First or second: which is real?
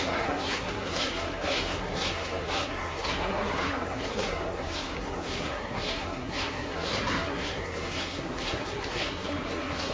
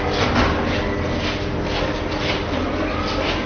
second